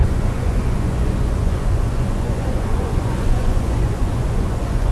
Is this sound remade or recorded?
remade